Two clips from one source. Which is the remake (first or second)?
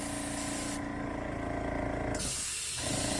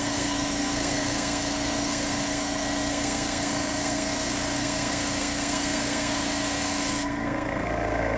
second